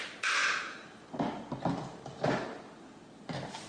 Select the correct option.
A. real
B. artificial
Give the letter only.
A